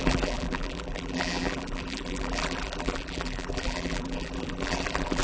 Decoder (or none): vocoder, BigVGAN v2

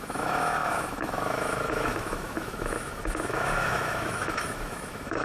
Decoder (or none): autoencoder, DAC-VAE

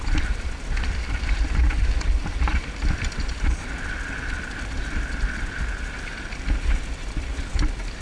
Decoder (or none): none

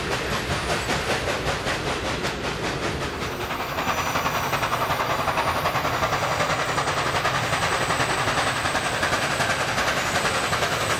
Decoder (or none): none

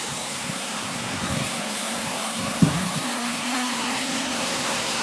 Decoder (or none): codec, SNAC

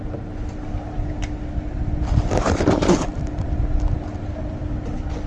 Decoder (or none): none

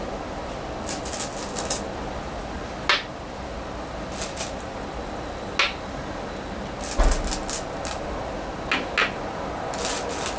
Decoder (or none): none